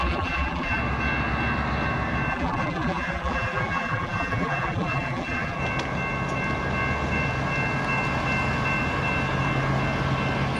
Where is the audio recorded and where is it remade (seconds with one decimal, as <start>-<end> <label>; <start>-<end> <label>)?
0.0-0.8 remade; 0.8-2.3 recorded; 2.3-5.6 remade; 5.6-10.6 recorded